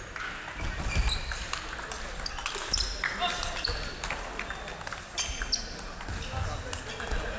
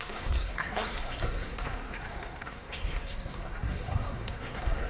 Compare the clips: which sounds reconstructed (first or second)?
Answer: second